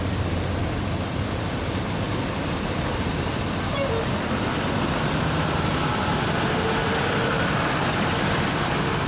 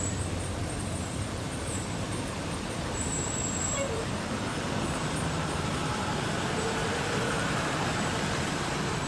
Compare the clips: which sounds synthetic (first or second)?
second